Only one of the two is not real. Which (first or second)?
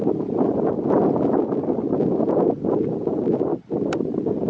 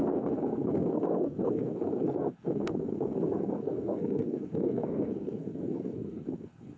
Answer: second